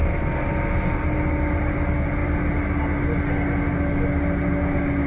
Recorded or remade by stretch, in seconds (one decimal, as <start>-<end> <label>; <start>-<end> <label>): 0.0-5.1 recorded